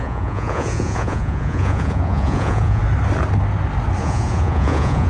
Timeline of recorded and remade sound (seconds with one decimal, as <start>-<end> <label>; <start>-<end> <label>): 0.0-2.8 remade; 2.8-4.0 recorded; 4.0-5.1 remade